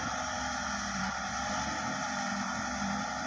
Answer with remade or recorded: remade